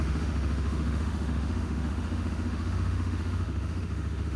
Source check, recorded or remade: remade